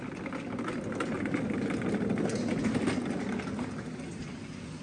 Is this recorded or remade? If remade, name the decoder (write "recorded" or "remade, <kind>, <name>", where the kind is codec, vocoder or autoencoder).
recorded